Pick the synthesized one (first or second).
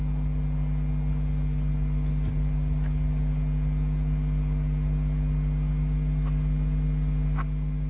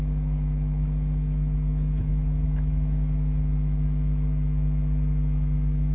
second